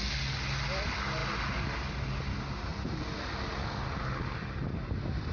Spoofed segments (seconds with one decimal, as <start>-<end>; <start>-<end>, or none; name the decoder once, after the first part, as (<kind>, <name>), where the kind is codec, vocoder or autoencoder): none